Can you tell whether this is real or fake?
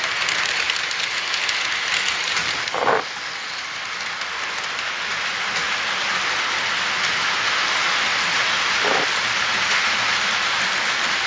real